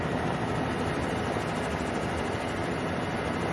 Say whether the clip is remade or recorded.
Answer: remade